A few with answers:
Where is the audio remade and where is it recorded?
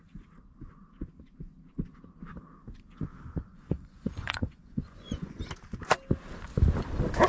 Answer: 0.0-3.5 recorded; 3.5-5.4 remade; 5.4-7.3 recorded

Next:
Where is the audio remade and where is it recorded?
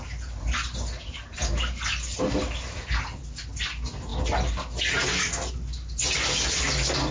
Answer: 0.0-7.1 recorded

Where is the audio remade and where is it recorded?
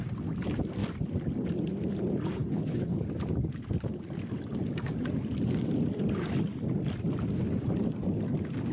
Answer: 0.0-2.4 recorded; 2.4-3.0 remade; 3.0-8.7 recorded